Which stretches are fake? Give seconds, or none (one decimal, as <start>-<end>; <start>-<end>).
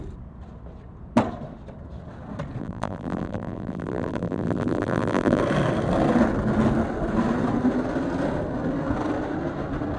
2.6-5.4